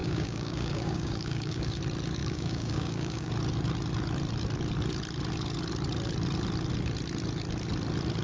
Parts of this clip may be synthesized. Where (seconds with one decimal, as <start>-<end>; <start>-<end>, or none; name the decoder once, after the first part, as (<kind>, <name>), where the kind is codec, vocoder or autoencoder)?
0.0-1.8 (codec, DAC); 2.2-3.3